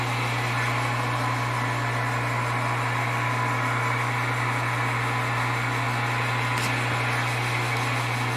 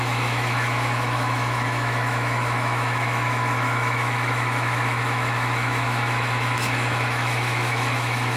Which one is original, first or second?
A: first